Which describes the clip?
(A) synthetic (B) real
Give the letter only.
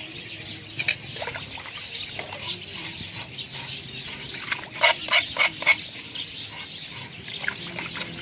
B